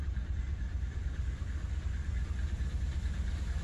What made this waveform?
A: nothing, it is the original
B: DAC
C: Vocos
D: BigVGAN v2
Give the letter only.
A